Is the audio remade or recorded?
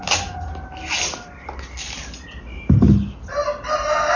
recorded